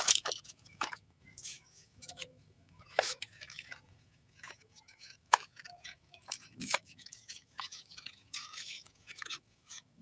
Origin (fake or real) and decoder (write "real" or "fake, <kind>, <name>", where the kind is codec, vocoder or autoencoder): fake, autoencoder, DAC-VAE